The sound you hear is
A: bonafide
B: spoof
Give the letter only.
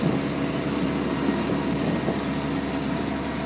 A